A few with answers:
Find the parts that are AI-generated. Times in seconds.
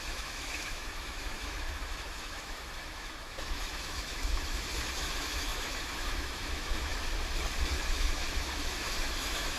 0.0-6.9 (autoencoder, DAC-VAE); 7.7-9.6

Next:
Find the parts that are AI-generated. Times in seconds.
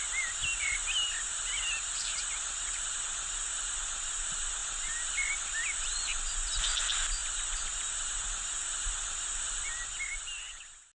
none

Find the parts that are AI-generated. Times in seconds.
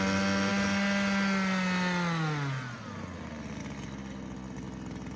none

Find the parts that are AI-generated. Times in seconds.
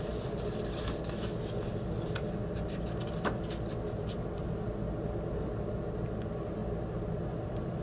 none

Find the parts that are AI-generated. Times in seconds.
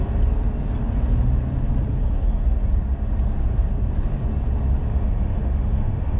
4.9-6.2 (autoencoder, DAC-VAE)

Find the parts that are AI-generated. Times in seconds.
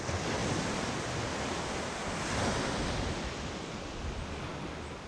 none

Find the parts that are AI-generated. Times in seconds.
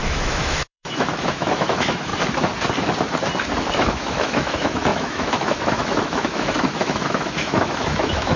0.0-2.1 (autoencoder, DAC-VAE); 3.7-8.4